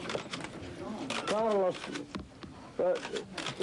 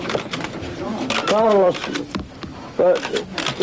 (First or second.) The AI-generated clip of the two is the second